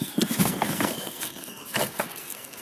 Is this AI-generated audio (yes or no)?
yes